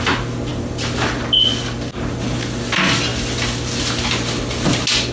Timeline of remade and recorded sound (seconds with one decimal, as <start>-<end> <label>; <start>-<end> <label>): 0.0-5.1 recorded